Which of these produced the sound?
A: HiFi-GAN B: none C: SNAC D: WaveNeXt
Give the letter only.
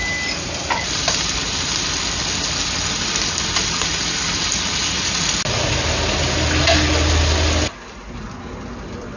B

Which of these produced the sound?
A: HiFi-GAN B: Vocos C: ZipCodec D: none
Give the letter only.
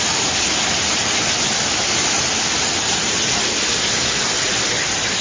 D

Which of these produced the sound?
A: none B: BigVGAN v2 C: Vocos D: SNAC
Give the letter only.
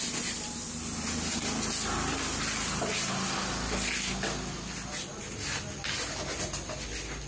A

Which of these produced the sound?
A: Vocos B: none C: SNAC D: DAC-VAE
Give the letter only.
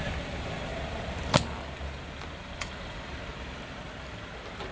B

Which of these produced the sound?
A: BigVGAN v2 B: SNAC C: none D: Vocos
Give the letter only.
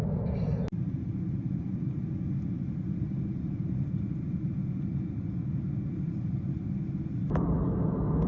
C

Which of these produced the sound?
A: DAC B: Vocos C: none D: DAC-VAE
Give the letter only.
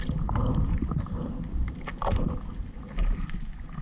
C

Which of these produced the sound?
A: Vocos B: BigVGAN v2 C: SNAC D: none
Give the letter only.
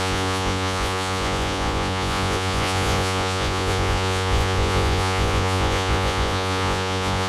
A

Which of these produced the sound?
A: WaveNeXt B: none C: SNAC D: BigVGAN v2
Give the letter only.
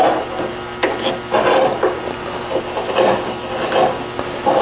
B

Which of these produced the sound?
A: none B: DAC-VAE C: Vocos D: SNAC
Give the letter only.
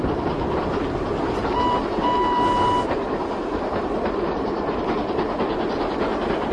A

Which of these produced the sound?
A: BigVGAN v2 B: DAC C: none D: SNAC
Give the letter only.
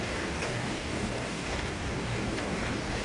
B